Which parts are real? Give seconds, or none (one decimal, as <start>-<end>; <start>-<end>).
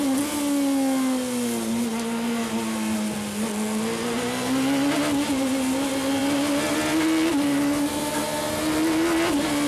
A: 0.0-9.7